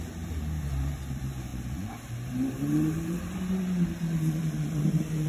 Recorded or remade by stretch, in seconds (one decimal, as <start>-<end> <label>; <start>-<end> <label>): 0.0-5.3 remade